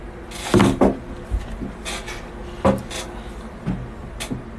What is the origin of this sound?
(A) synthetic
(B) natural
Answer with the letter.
B